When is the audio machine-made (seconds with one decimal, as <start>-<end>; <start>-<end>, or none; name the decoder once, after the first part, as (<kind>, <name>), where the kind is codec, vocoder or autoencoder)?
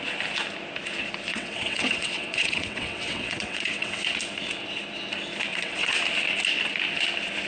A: 1.3-4.0 (vocoder, WaveNeXt); 5.5-6.0